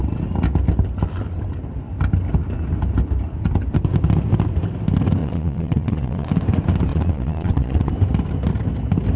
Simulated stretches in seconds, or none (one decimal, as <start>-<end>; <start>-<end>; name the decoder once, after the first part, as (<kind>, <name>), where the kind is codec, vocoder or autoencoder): 5.2-6.3 (vocoder, Vocos); 6.9-7.9